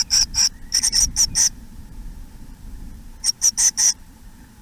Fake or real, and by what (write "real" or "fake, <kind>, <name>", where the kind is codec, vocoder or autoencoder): fake, vocoder, BigVGAN v2